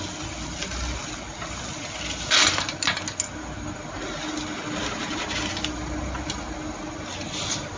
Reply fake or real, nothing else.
real